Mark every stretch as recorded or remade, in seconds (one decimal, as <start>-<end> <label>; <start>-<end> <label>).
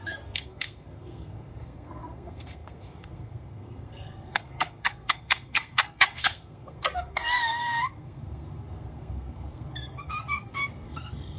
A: 0.0-11.4 remade